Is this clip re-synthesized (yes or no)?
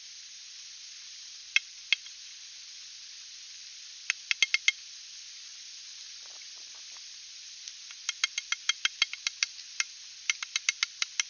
no